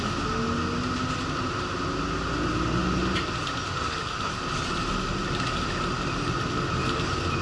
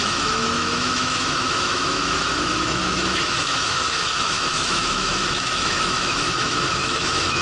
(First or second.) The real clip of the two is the first